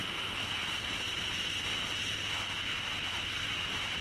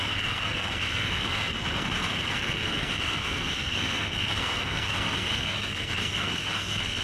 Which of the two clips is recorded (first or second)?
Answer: first